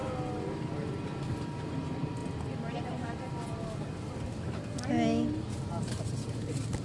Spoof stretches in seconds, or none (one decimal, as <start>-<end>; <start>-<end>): 1.2-2.2; 5.4-6.8